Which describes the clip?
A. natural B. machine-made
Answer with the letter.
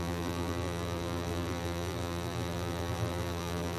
B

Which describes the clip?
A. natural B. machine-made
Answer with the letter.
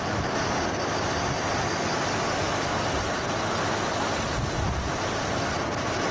A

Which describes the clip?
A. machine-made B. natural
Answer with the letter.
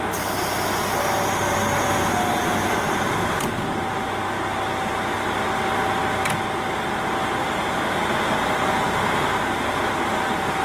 B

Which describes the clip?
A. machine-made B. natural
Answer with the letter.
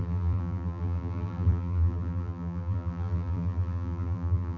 A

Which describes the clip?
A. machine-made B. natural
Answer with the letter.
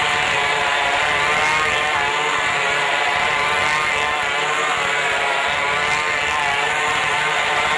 B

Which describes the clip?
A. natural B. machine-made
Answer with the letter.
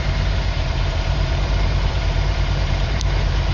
B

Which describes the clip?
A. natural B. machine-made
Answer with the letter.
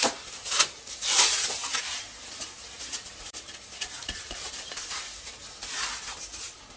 B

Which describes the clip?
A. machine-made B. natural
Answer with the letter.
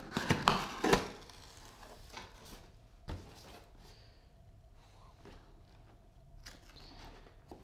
B